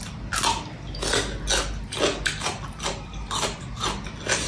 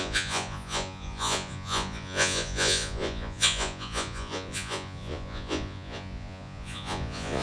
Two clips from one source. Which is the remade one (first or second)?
second